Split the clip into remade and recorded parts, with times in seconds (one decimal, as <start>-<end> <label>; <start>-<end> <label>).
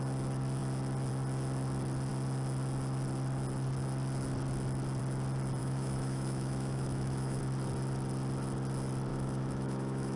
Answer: 0.0-5.6 recorded; 5.6-7.4 remade; 7.4-9.1 recorded; 9.1-10.2 remade